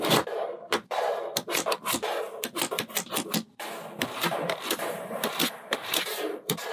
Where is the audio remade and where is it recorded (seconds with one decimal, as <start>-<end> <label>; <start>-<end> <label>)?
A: 0.0-0.7 remade; 0.7-4.7 recorded; 4.7-6.7 remade